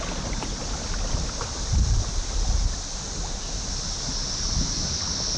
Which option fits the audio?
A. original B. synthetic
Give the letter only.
A